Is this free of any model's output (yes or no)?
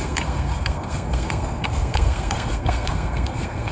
no